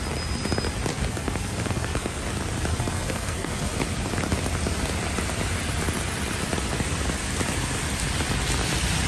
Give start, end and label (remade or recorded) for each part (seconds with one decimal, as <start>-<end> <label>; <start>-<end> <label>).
0.0-0.9 recorded; 0.9-2.2 remade; 2.2-2.7 recorded; 2.7-3.7 remade; 3.7-9.1 recorded